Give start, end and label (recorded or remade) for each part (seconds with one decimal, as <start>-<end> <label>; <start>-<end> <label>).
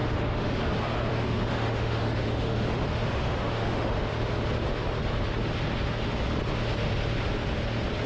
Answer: 0.0-0.6 remade; 0.6-1.1 recorded; 1.1-4.1 remade; 4.1-8.1 recorded